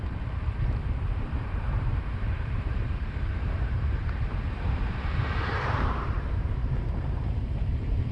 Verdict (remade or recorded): remade